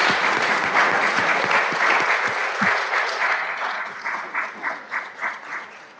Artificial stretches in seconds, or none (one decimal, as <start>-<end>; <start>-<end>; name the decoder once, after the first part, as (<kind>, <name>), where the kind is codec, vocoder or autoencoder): 0.0-6.0 (vocoder, Vocos)